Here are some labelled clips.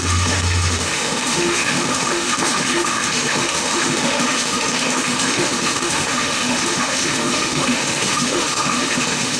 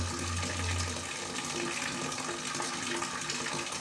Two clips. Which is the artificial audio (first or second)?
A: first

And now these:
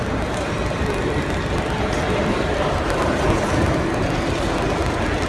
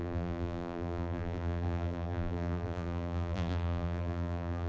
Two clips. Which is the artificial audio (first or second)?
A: second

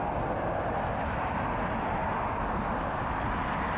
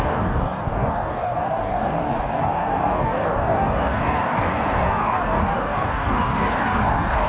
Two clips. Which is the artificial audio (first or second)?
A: second